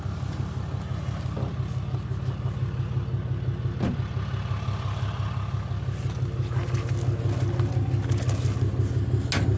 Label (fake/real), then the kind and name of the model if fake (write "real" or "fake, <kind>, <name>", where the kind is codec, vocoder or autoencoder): real